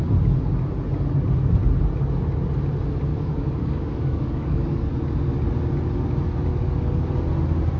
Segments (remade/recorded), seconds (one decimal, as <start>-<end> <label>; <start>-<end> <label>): 0.0-3.1 recorded; 3.1-4.9 remade; 4.9-6.5 recorded; 6.5-7.1 remade; 7.1-7.8 recorded